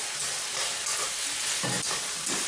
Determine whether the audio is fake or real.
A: real